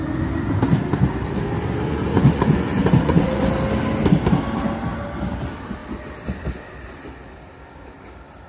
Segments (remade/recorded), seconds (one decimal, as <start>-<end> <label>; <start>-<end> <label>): 0.0-1.9 recorded; 1.9-3.5 remade; 3.5-8.5 recorded